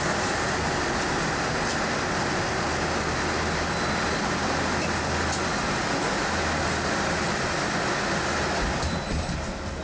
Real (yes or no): yes